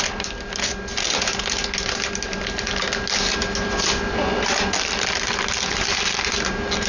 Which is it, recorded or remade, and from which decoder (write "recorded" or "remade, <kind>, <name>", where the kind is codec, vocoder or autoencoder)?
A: recorded